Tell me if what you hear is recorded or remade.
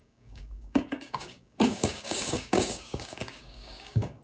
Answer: remade